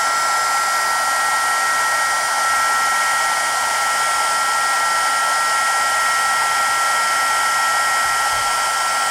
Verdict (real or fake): real